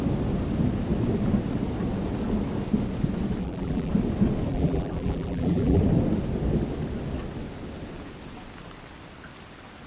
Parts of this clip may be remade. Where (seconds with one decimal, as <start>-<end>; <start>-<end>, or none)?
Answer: 3.4-3.9; 4.5-5.8